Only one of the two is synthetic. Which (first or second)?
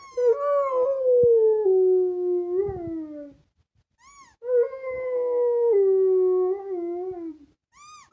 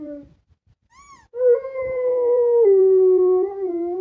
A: second